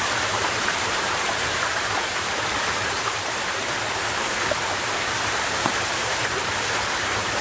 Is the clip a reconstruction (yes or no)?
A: yes